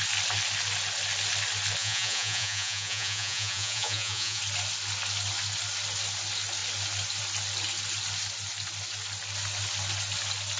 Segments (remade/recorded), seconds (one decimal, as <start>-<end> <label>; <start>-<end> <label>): 0.0-1.8 recorded; 1.8-4.4 remade; 4.4-10.6 recorded